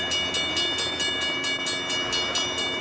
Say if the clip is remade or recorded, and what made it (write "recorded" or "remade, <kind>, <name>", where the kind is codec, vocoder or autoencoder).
recorded